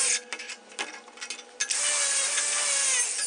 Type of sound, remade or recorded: recorded